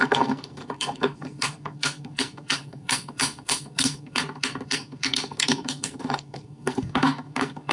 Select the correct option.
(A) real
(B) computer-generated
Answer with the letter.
B